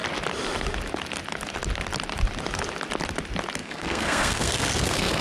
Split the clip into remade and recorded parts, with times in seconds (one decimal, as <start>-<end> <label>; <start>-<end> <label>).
0.0-3.6 recorded; 3.6-5.2 remade